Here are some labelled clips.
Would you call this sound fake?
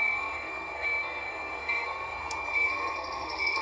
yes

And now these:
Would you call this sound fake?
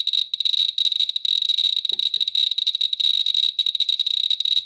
no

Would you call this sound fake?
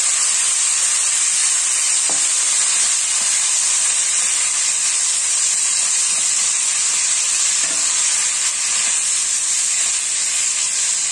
no